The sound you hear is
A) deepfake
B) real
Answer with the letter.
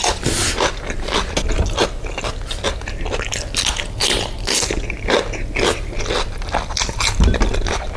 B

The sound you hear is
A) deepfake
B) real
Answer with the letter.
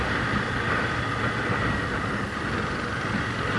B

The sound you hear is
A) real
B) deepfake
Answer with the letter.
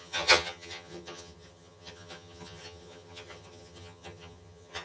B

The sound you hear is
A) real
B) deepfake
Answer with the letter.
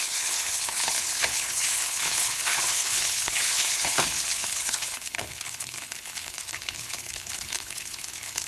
B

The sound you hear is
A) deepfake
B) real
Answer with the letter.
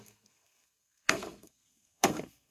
A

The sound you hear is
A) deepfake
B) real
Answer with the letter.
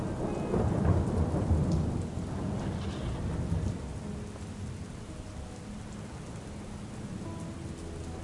B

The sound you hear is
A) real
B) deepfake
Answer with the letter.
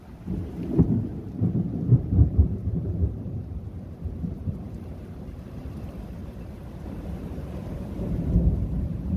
B